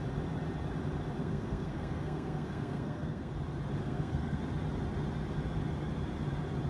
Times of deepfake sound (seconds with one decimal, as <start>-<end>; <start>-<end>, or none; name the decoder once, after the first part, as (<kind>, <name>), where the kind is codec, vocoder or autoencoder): 1.2-3.3 (codec, SNAC); 3.8-4.4